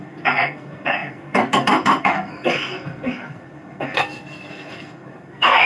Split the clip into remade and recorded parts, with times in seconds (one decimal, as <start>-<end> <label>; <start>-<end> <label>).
0.0-5.7 remade